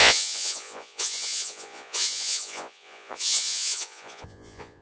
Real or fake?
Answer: fake